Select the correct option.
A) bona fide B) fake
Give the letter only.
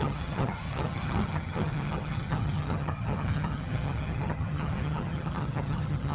B